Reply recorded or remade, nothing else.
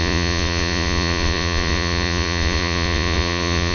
remade